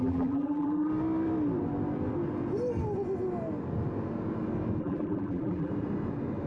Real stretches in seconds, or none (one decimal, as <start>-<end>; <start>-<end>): 0.9-4.8; 5.7-6.5